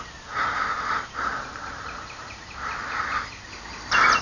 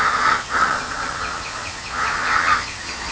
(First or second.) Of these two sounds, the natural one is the first